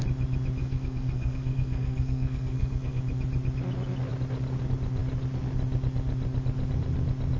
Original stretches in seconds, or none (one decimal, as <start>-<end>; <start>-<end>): 0.0-0.6; 3.0-7.4